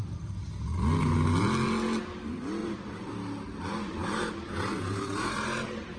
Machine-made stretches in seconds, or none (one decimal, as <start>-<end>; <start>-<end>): 2.6-3.1; 4.0-6.0